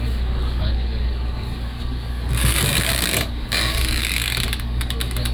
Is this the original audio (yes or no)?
no